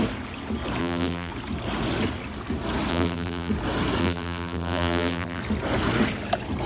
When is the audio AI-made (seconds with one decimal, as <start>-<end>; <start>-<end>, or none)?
0.8-1.3; 2.9-3.5; 4.0-5.4